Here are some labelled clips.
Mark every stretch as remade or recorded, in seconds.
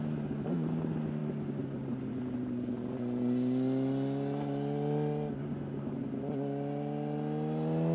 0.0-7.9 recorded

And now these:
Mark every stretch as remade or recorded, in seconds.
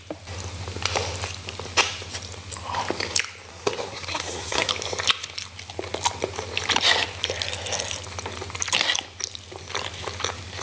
0.0-3.5 recorded; 3.5-4.7 remade; 4.7-10.6 recorded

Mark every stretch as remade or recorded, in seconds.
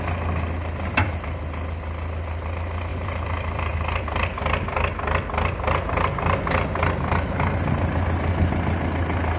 0.0-2.9 recorded; 2.9-4.0 remade; 4.0-9.4 recorded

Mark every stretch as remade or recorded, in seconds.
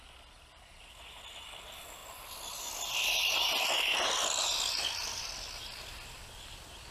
0.0-6.9 recorded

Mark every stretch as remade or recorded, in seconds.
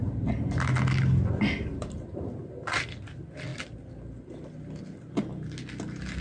0.0-1.7 recorded; 1.7-3.1 remade; 3.1-6.2 recorded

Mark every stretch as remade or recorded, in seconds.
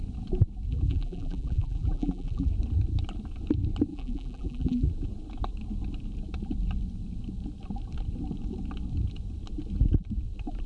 0.0-0.7 recorded; 0.7-2.5 remade; 2.5-3.9 recorded; 3.9-4.9 remade; 4.9-10.7 recorded